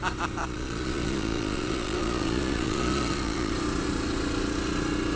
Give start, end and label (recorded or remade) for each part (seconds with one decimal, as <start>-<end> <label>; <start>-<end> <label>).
0.0-0.4 recorded; 0.4-3.5 remade; 3.5-5.2 recorded